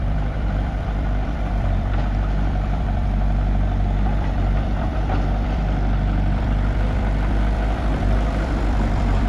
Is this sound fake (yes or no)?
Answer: yes